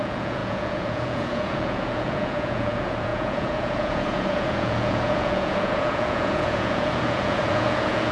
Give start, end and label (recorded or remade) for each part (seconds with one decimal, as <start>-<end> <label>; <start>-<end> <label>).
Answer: 0.0-8.1 remade